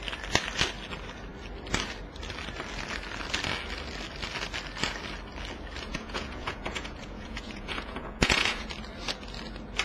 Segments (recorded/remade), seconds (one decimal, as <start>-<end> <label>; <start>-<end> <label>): 0.0-5.9 recorded; 5.9-8.7 remade; 8.7-9.8 recorded